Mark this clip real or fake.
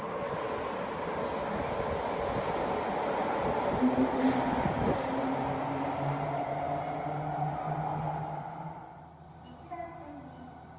real